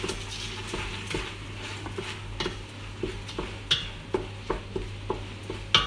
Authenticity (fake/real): real